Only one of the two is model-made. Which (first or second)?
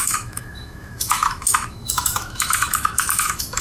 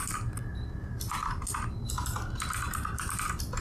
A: first